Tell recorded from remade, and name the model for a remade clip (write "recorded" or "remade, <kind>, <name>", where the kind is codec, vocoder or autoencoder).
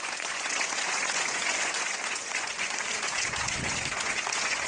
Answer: remade, vocoder, Vocos